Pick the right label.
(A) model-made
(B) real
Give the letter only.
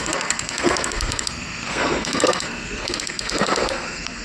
A